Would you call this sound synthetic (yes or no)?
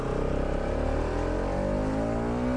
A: no